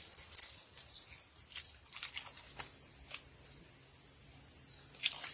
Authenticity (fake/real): real